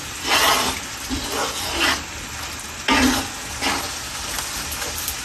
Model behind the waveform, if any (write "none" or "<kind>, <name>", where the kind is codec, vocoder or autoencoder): none